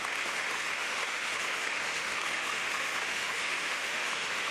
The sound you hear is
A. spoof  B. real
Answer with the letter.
A